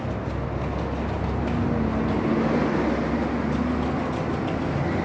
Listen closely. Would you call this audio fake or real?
real